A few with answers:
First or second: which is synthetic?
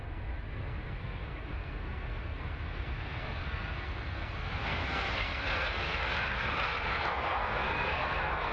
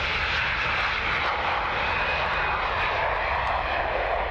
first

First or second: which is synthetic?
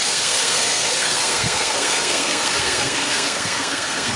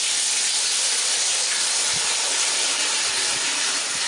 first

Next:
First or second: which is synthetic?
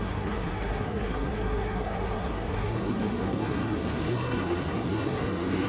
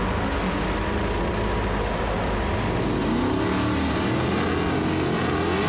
first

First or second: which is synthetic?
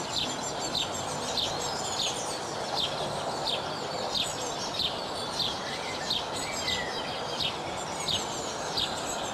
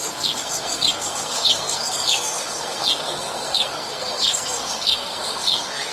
second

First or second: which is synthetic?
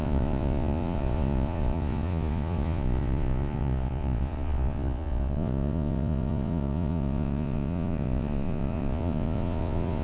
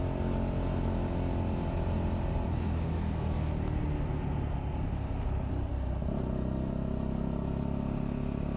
first